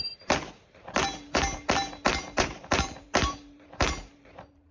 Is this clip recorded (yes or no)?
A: no